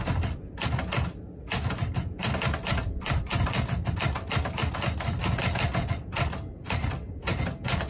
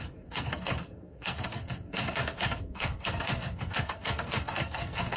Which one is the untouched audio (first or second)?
first